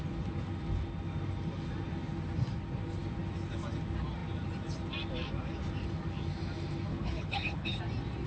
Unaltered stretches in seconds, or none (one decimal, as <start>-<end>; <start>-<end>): 0.0-6.9; 7.8-8.3